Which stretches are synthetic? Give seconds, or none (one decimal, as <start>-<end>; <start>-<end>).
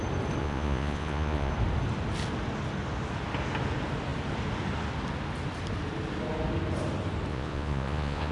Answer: 0.4-1.5; 7.3-8.3